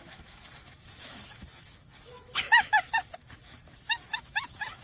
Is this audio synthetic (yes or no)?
yes